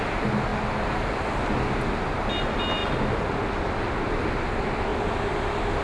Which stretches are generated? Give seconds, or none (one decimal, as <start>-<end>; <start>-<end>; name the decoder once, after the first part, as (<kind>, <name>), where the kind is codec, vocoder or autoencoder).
none